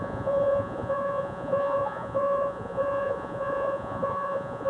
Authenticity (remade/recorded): remade